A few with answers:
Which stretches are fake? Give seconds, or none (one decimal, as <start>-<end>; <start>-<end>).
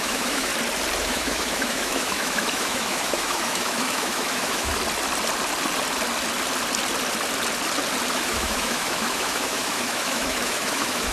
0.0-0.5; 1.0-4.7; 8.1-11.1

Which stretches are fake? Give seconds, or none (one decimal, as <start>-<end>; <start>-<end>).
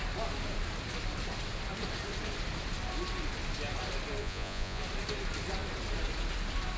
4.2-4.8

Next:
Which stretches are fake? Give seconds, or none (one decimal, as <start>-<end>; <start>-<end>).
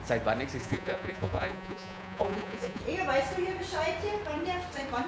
0.6-2.8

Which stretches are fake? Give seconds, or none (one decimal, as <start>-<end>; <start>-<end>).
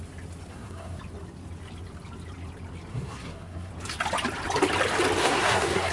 0.5-1.0; 2.9-3.7; 5.2-5.9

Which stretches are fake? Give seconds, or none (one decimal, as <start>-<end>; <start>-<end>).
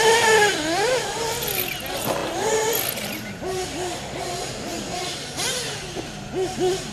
none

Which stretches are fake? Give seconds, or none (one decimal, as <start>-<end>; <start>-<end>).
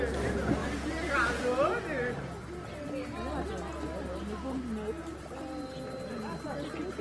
none